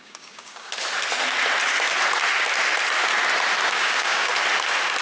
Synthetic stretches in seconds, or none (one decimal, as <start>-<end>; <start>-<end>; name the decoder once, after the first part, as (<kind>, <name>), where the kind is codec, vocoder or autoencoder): 0.0-0.7 (codec, DAC); 3.7-4.3